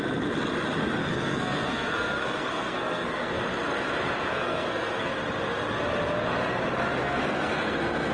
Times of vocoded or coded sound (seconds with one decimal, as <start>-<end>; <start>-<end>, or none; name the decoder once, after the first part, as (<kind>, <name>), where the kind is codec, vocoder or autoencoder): 1.0-3.4 (codec, SNAC); 4.3-5.1; 7.0-8.1